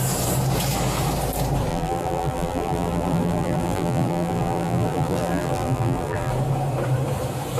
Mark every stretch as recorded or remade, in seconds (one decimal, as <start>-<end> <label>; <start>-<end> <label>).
0.0-1.7 recorded; 1.7-6.3 remade; 6.3-7.6 recorded